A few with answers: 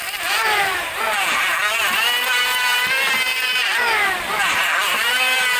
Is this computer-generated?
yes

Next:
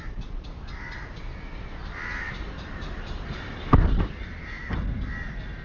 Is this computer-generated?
yes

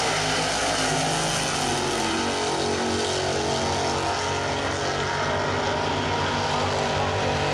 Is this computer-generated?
no